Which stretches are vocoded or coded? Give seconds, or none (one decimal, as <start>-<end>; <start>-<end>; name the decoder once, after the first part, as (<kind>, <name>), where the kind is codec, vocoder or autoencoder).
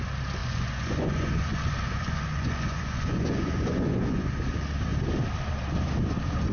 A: 0.4-4.3 (vocoder, Vocos)